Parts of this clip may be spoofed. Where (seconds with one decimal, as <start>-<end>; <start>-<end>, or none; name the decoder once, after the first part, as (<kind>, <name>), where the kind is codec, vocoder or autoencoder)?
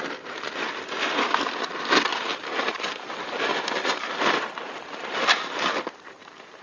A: 2.3-6.6 (vocoder, BigVGAN v2)